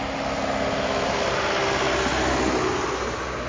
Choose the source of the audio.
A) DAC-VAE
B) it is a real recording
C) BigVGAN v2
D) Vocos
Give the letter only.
B